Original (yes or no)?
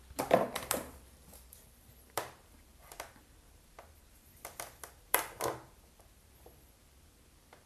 no